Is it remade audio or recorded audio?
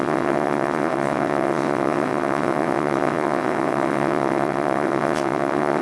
remade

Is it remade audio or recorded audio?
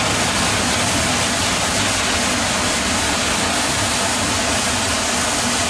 recorded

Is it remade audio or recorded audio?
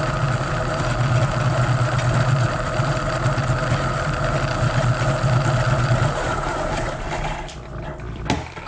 recorded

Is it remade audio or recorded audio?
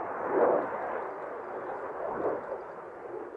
recorded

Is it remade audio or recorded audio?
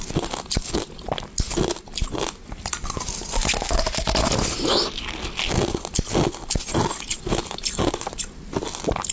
recorded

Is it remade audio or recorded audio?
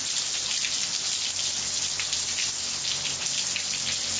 recorded